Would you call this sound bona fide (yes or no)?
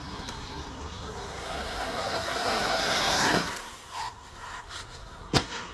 no